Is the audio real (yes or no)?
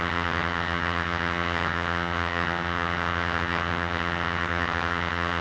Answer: no